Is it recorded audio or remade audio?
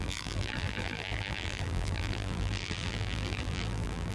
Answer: remade